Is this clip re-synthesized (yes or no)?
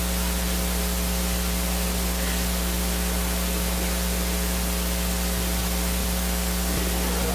no